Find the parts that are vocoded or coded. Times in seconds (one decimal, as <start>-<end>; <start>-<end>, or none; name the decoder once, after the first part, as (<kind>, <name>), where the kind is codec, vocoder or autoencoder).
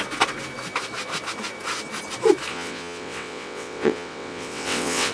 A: 2.5-5.1 (vocoder, WaveNeXt)